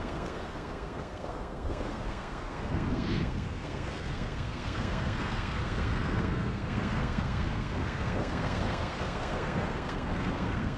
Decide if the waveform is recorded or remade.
remade